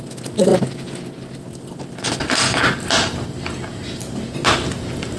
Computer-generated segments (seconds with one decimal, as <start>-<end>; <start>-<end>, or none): none